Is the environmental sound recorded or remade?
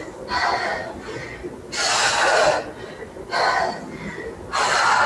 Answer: recorded